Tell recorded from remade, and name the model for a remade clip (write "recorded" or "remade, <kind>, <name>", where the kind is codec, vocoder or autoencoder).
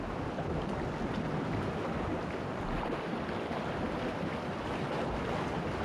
recorded